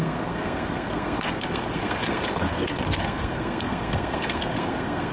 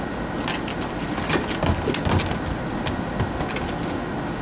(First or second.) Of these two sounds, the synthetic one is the first